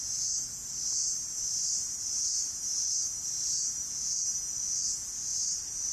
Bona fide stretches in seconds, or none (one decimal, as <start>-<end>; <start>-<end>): 0.0-1.0; 3.8-5.3